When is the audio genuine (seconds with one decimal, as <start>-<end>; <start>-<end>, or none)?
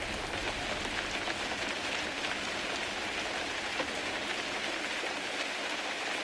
0.0-6.2